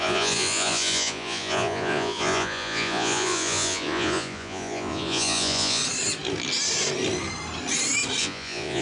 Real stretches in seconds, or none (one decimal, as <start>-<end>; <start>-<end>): 5.8-8.2

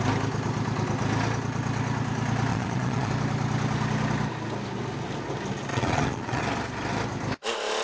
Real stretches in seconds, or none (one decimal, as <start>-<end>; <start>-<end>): 0.0-2.5; 3.1-5.7; 6.4-7.8

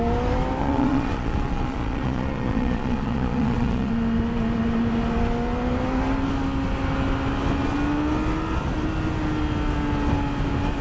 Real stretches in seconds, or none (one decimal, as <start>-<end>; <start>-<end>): 0.0-0.6; 3.9-10.8

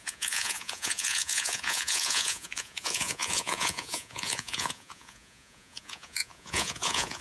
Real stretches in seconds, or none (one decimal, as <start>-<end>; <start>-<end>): none

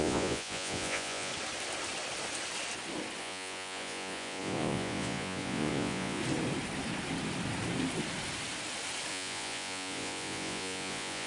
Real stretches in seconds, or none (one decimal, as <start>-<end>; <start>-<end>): 1.3-3.2; 6.2-9.1